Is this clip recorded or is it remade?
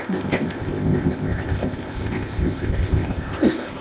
remade